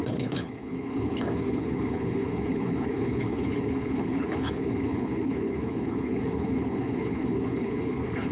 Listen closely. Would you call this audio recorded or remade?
remade